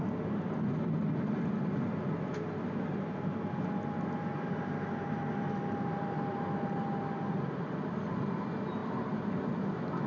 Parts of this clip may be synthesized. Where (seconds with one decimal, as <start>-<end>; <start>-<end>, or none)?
none